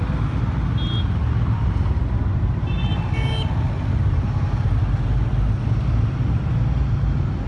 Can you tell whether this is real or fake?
real